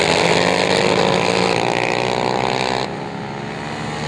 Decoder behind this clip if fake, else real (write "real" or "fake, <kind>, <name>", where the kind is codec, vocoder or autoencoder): real